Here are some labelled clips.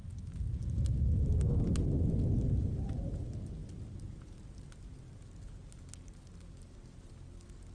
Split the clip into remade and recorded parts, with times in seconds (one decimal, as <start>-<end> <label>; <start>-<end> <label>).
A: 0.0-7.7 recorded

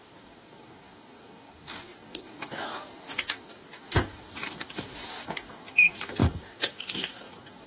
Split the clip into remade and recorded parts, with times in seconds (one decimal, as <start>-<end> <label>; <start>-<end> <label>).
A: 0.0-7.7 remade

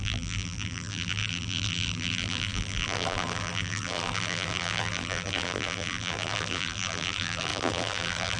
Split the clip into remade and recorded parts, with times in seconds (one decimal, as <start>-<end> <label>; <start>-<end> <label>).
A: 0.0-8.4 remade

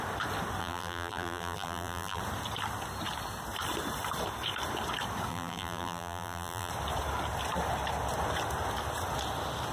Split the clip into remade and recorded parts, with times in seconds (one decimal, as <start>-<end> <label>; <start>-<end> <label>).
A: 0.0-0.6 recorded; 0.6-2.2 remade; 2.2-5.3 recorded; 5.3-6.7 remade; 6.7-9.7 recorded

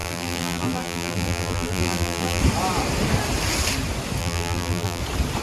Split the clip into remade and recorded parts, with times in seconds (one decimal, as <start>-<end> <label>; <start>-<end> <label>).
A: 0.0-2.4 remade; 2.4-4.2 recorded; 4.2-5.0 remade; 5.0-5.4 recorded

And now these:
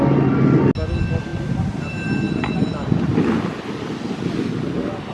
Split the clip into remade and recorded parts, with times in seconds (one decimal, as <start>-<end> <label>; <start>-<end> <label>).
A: 0.0-5.1 recorded

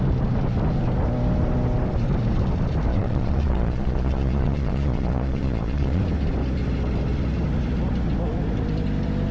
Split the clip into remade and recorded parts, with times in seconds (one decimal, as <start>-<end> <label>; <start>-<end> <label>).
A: 0.0-2.9 recorded; 2.9-6.0 remade; 6.0-9.3 recorded

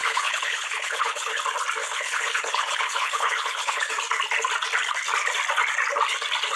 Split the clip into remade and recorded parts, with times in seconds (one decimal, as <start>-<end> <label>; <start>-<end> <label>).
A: 0.0-1.4 remade; 1.4-1.8 recorded; 1.8-3.9 remade; 3.9-6.6 recorded